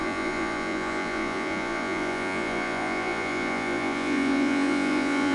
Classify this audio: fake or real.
fake